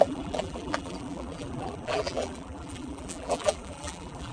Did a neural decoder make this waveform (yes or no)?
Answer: yes